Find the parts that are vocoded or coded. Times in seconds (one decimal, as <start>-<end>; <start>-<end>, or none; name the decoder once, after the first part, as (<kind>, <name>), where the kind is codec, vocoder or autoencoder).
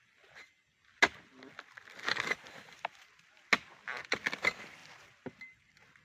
none